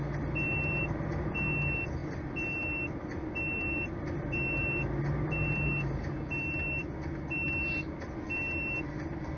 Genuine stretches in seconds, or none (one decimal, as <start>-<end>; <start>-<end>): 0.0-9.4